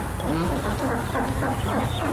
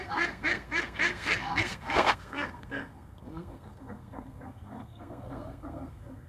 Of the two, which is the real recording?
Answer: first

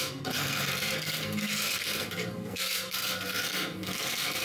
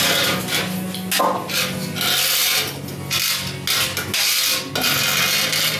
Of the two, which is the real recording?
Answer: second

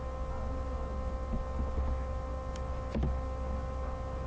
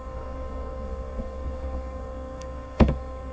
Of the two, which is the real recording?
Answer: first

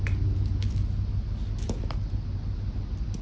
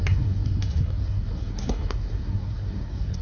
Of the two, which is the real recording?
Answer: first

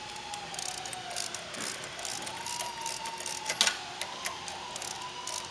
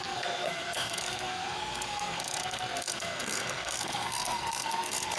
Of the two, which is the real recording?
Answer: first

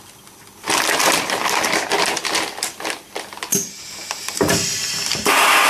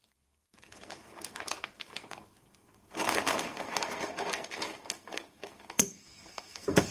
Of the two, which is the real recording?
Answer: first